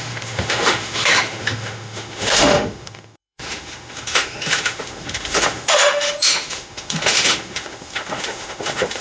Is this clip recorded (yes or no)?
no